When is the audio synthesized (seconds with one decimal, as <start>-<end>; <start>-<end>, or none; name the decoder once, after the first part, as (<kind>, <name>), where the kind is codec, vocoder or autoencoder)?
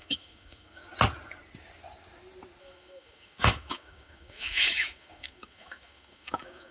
0.0-0.9 (autoencoder, DAC-VAE); 2.6-6.7